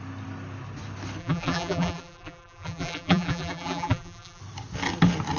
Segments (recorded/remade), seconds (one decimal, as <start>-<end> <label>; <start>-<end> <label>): 0.0-1.2 recorded; 1.2-4.4 remade; 4.4-5.4 recorded